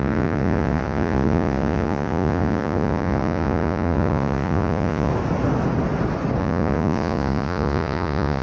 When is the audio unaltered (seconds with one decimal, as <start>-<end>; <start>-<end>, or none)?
5.1-6.4